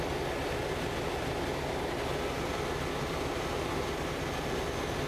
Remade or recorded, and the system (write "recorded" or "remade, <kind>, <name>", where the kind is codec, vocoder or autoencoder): recorded